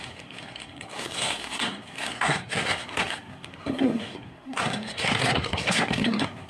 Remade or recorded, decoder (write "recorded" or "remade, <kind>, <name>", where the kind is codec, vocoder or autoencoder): remade, codec, SNAC